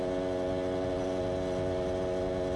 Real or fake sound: real